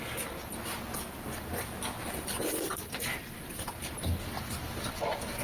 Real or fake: real